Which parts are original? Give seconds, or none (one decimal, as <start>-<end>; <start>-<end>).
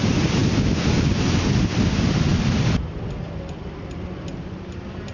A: 0.0-5.1